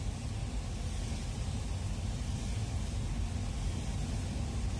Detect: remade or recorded recorded